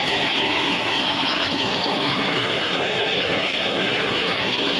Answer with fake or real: fake